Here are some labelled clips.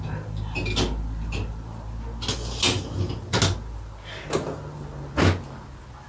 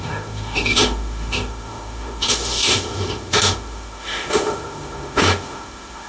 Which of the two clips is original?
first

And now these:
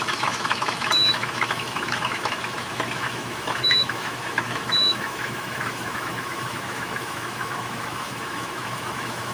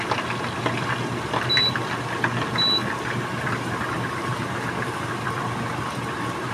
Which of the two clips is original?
second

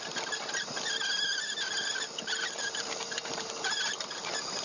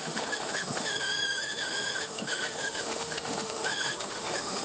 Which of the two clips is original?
first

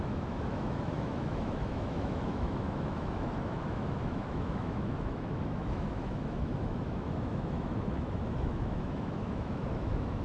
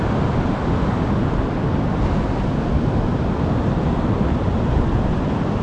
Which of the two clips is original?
second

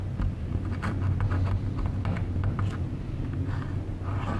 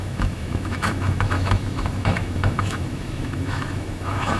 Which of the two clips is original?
first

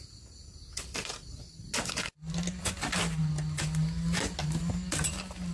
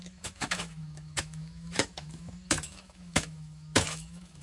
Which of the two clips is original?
first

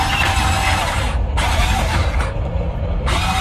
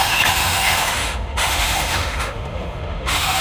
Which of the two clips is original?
first